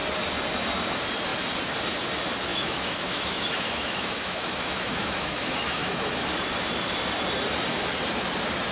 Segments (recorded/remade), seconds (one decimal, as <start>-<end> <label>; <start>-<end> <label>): 0.0-2.5 recorded; 2.5-6.1 remade; 6.1-8.7 recorded